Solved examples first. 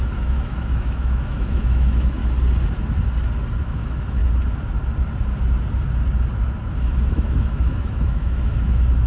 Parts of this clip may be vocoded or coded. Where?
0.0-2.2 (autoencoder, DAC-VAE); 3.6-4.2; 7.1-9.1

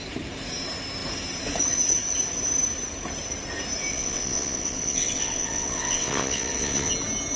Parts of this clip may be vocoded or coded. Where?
3.9-6.9 (vocoder, WaveNeXt)

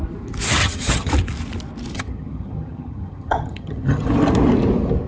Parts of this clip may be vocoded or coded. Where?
0.6-1.1 (vocoder, HiFi-GAN); 1.9-4.1

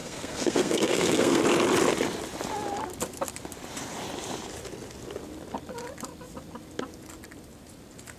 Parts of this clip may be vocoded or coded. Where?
0.0-1.4 (codec, SNAC)

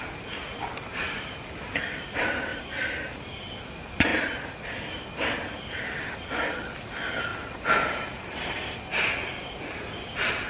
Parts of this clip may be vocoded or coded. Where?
4.1-4.9 (vocoder, BigVGAN v2)